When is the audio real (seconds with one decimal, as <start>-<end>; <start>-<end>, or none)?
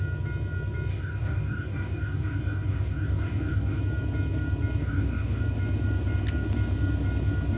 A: 0.0-0.9; 3.8-4.8; 5.4-7.6